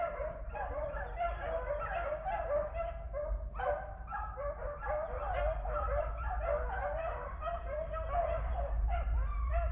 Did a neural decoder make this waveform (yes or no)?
yes